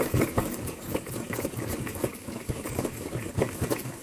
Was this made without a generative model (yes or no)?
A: no